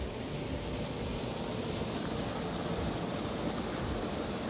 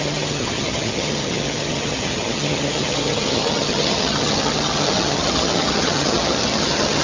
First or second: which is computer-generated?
second